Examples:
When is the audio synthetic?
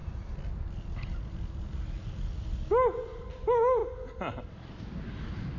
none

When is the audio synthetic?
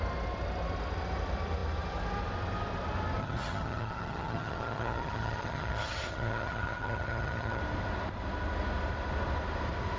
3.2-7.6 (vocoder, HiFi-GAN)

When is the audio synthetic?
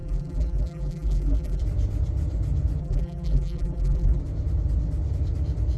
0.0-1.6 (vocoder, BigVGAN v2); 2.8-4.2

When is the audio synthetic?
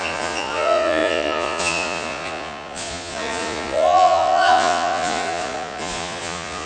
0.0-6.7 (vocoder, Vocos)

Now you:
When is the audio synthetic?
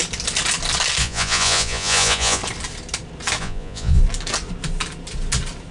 1.0-2.4 (vocoder, Vocos); 3.4-4.0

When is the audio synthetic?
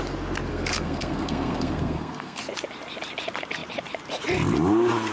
0.5-2.4 (codec, SNAC)